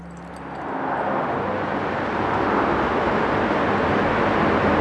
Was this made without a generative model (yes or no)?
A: yes